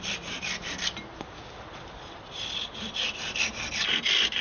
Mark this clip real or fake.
real